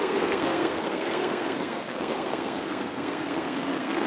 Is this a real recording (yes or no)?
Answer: no